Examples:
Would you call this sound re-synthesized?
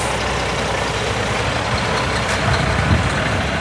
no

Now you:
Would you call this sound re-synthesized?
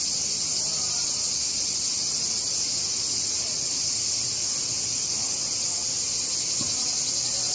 no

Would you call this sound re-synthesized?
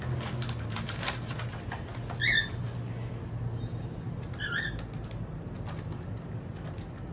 no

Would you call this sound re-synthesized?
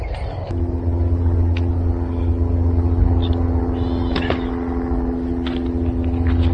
no